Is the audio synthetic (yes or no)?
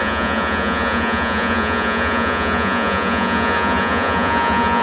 yes